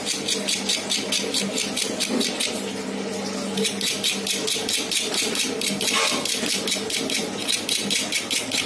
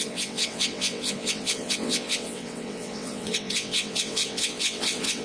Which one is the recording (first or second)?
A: first